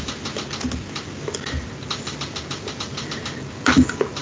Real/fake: real